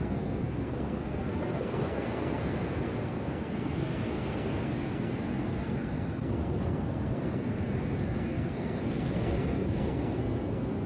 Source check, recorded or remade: remade